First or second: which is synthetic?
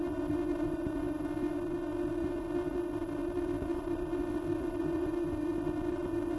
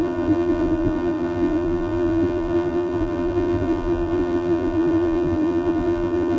second